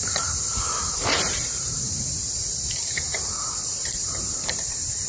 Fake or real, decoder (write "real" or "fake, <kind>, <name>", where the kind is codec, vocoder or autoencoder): fake, vocoder, BigVGAN v2